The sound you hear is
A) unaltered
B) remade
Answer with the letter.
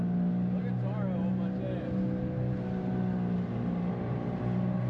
A